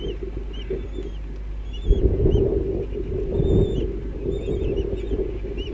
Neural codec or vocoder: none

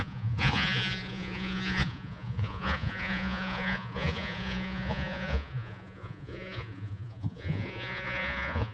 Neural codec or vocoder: vocoder, Vocos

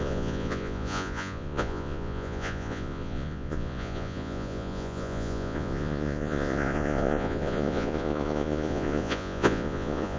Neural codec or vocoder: vocoder, Vocos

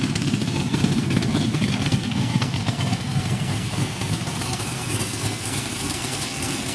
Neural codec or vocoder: codec, SNAC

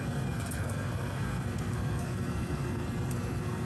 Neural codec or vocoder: codec, SNAC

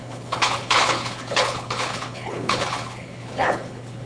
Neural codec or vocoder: codec, HILCodec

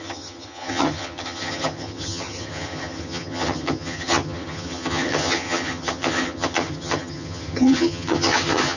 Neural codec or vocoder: vocoder, HiFi-GAN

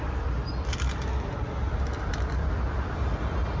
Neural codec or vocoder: none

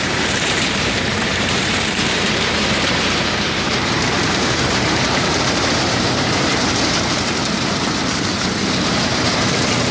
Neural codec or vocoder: vocoder, BigVGAN v2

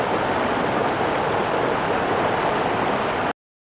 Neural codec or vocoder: none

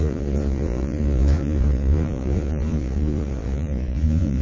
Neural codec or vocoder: vocoder, Vocos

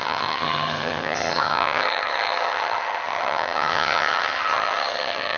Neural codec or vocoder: vocoder, HiFi-GAN